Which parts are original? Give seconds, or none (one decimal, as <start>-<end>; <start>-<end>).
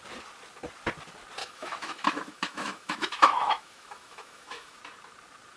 0.0-1.4; 4.8-5.6